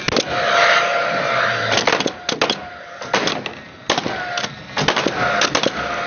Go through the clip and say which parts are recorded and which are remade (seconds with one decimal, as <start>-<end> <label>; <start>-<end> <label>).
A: 0.0-6.1 recorded